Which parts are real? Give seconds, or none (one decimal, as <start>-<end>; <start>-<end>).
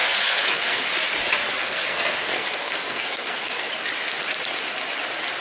0.8-1.4; 3.7-5.4